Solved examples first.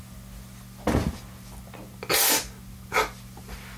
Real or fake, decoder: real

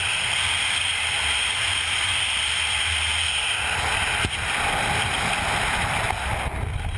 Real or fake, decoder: real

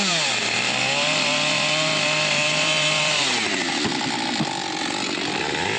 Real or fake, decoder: fake, vocoder, BigVGAN v2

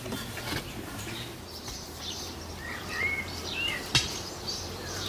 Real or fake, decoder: fake, vocoder, BigVGAN v2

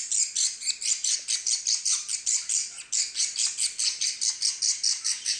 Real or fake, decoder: real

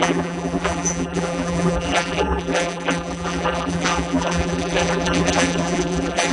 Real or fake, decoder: fake, vocoder, BigVGAN v2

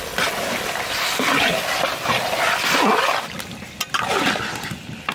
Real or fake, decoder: real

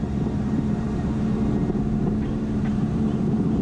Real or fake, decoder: fake, vocoder, BigVGAN v2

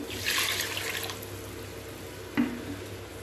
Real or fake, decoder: real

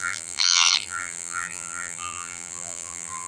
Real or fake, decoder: fake, vocoder, BigVGAN v2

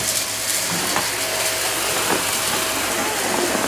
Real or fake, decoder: real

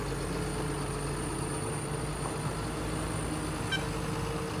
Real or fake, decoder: real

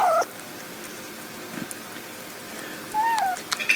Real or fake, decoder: real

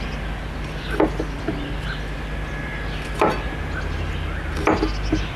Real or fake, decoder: real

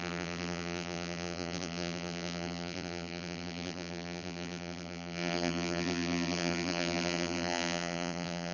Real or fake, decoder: fake, vocoder, BigVGAN v2